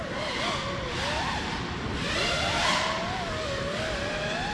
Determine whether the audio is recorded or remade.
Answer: recorded